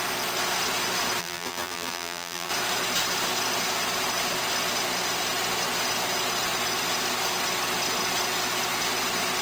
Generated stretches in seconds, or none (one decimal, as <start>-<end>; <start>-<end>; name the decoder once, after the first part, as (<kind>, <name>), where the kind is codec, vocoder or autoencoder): 1.2-2.5 (vocoder, BigVGAN v2)